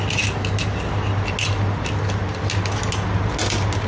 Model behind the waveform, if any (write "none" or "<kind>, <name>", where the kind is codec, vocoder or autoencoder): none